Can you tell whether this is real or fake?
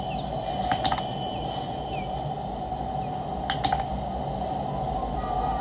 real